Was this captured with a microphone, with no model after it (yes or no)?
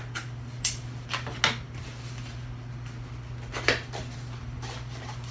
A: yes